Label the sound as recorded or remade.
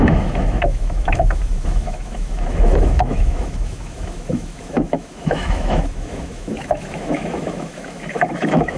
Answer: remade